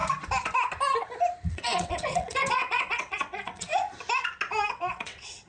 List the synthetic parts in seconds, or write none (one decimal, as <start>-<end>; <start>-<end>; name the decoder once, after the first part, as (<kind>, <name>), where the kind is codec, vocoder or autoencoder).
1.5-3.7 (vocoder, WaveNeXt); 4.7-5.5

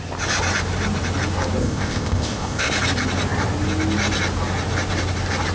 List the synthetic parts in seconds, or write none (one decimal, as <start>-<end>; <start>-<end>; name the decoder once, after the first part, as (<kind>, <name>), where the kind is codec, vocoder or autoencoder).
1.6-2.7 (codec, ZipCodec)

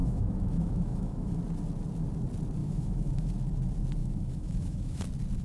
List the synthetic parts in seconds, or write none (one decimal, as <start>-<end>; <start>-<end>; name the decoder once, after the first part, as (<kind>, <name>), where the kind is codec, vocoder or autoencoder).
0.0-1.4 (autoencoder, DAC-VAE); 2.6-3.3; 4.0-5.0

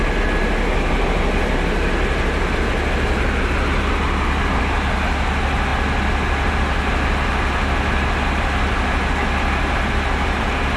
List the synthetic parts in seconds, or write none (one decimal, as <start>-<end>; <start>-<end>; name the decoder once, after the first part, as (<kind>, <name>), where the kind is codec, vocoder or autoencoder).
none